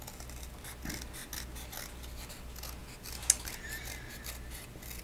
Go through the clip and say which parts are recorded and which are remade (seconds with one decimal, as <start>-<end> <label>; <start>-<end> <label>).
0.0-5.0 recorded